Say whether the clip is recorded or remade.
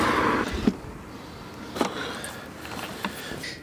recorded